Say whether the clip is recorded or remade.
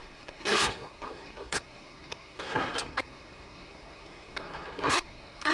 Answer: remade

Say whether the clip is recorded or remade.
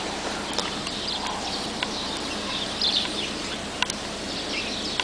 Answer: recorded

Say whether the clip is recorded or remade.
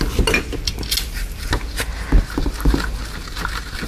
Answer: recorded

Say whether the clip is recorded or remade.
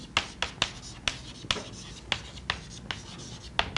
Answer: recorded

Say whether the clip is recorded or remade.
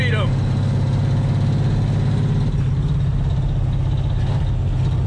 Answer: recorded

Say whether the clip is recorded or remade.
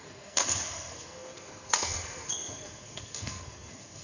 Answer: remade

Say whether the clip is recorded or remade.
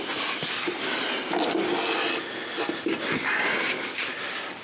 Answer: recorded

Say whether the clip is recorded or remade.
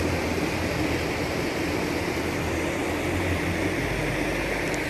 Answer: recorded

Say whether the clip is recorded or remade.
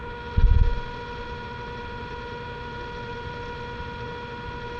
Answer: recorded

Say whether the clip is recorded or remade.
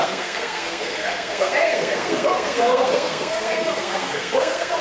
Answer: remade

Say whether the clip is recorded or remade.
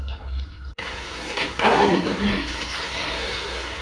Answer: remade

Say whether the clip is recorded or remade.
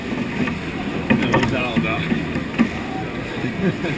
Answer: recorded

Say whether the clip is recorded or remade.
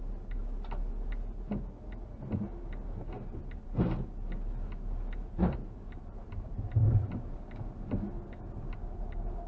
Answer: recorded